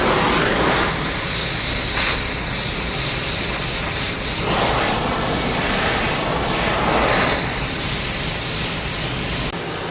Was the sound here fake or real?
real